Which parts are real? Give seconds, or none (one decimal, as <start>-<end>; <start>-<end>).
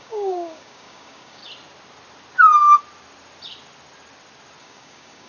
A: 1.4-4.6